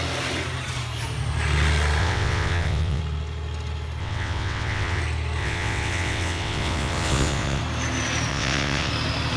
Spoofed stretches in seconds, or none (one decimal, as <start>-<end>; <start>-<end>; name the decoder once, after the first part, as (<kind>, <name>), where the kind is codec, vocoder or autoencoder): 2.0-3.0 (vocoder, WaveNeXt); 4.0-5.0; 5.4-7.6; 8.3-8.9